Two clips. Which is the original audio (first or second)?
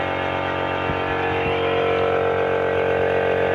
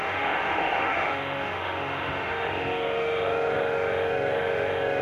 first